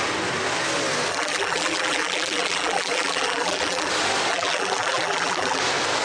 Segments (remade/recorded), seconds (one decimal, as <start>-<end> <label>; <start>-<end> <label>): 0.0-1.1 recorded; 1.1-3.9 remade; 3.9-4.3 recorded; 4.3-5.6 remade; 5.6-6.0 recorded